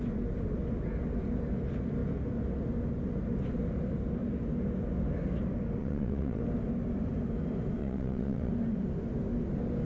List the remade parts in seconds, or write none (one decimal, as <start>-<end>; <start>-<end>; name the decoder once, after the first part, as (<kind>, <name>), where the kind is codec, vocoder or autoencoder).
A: 5.8-6.4 (vocoder, WaveNeXt); 7.8-8.5